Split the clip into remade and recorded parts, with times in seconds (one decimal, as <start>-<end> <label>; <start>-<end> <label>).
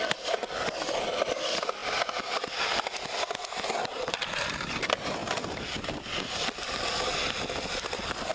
0.0-8.3 recorded